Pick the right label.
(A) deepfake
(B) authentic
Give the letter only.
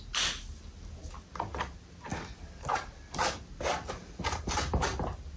B